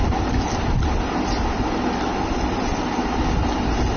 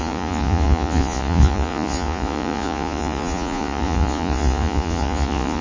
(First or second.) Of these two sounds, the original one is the first